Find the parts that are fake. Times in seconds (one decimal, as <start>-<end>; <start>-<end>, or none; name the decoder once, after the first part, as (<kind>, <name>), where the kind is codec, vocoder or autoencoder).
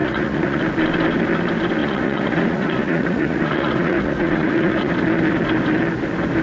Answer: 0.0-0.6 (vocoder, Vocos); 1.8-4.9